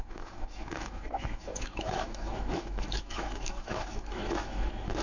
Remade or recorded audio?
remade